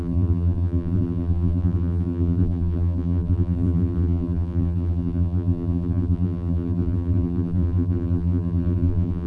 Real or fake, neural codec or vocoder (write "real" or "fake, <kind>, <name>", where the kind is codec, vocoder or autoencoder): fake, vocoder, BigVGAN v2